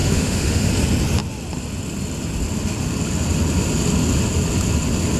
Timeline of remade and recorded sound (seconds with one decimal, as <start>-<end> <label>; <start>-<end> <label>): 0.0-0.7 remade; 0.7-5.2 recorded